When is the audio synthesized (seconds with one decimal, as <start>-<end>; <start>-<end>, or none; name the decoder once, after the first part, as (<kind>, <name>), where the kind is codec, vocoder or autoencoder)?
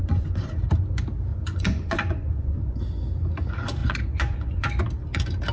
0.0-0.5 (vocoder, Vocos); 1.3-2.8; 3.8-4.8